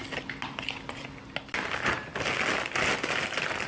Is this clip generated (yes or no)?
no